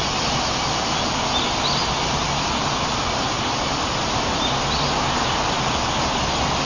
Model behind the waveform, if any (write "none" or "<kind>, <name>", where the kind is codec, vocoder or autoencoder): none